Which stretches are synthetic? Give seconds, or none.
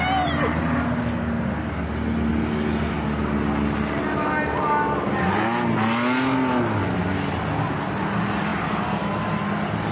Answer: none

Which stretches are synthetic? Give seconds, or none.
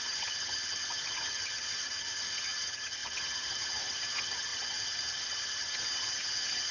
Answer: 0.0-6.7 (vocoder, HiFi-GAN)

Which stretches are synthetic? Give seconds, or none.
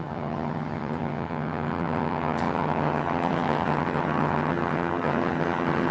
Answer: 0.0-5.9 (vocoder, HiFi-GAN)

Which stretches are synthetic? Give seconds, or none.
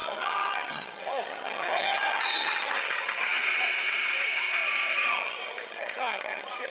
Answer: 0.0-6.7 (vocoder, HiFi-GAN)